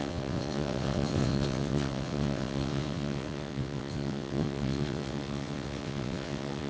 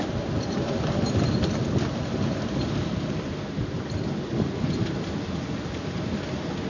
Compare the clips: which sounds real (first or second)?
second